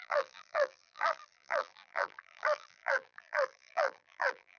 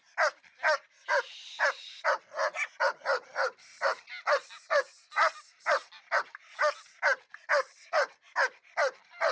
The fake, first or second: first